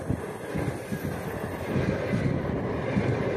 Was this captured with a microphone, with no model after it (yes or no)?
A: yes